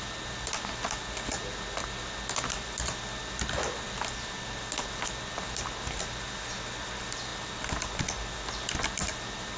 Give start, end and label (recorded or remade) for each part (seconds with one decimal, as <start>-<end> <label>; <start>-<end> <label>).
0.0-9.6 recorded